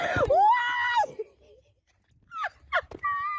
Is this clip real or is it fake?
real